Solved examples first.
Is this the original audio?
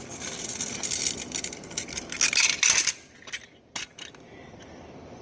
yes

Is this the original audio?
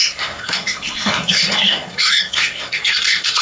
no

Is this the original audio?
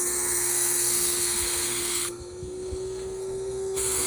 no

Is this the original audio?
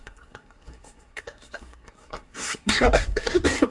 no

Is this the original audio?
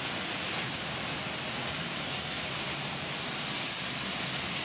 yes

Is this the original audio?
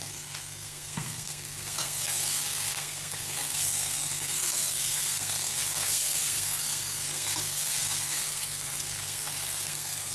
no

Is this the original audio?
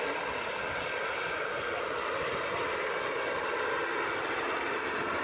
yes